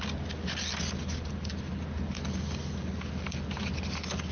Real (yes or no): yes